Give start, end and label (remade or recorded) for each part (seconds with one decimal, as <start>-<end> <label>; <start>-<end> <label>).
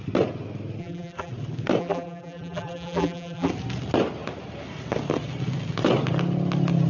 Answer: 0.0-0.8 recorded; 0.8-1.3 remade; 1.3-1.8 recorded; 1.8-3.5 remade; 3.5-6.9 recorded